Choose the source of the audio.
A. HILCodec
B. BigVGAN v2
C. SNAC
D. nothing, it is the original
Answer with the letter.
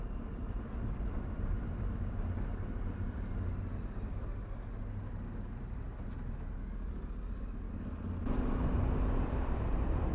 D